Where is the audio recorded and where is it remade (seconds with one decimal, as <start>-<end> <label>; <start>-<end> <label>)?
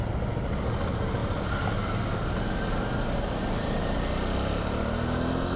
0.0-5.6 recorded